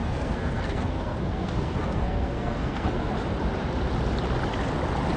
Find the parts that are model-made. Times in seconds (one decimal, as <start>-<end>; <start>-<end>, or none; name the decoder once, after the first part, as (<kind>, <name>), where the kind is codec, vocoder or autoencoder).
0.0-3.1 (codec, SNAC)